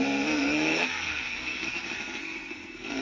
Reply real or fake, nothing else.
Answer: fake